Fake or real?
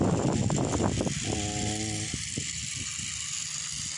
real